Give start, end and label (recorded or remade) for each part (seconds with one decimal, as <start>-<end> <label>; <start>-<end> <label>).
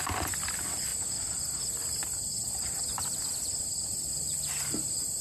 0.0-5.2 recorded